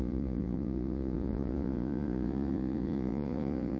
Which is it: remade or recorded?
remade